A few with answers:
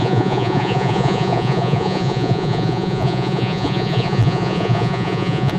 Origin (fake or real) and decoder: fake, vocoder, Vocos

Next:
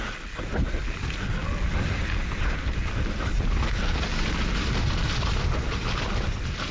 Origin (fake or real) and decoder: real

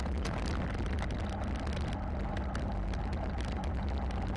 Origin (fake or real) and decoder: real